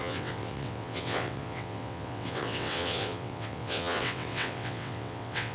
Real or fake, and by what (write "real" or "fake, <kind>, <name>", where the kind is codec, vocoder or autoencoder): fake, vocoder, WaveNeXt